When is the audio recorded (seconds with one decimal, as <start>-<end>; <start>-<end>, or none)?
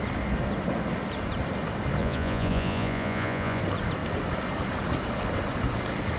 0.0-2.0; 3.6-6.2